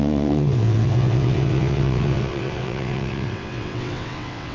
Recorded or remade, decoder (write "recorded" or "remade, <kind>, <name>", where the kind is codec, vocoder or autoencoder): remade, vocoder, WaveNeXt